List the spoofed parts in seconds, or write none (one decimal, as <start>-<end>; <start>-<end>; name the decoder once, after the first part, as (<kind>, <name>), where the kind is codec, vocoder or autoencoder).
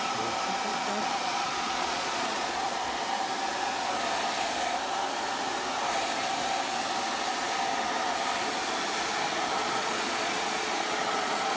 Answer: 0.7-3.0 (vocoder, Vocos); 9.6-11.6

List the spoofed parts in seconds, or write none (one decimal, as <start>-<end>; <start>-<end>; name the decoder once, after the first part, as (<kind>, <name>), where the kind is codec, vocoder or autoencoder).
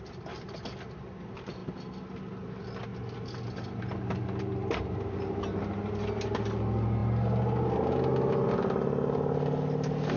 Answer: none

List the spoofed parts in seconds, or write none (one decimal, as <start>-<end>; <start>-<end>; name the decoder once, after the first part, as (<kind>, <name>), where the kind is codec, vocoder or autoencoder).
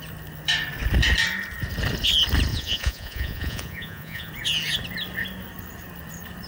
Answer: 2.5-4.3 (vocoder, Vocos)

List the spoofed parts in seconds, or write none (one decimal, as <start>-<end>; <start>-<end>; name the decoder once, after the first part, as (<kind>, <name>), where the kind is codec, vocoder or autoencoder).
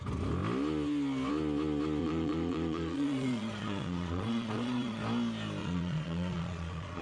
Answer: 2.0-5.0 (vocoder, Vocos); 5.6-7.0